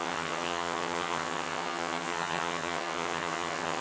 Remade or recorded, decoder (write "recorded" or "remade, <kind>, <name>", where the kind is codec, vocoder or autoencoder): remade, vocoder, HiFi-GAN